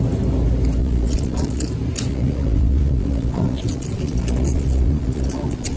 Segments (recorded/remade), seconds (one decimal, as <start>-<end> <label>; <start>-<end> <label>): 0.0-0.8 recorded; 0.8-1.7 remade; 1.7-2.1 recorded; 2.1-5.8 remade